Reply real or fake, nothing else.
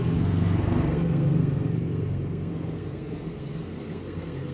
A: fake